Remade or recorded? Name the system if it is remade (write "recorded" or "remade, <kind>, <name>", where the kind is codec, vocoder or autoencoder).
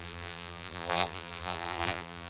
remade, vocoder, BigVGAN v2